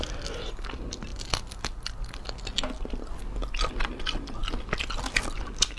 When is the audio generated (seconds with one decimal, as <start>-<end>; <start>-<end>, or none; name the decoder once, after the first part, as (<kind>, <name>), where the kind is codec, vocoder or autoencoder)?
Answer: none